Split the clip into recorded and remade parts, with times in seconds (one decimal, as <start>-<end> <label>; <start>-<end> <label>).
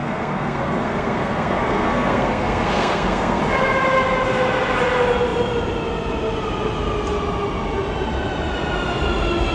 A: 0.0-3.4 remade; 3.4-9.5 recorded